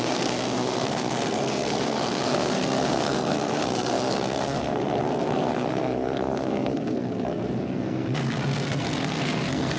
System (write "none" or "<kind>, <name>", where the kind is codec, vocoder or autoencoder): codec, SNAC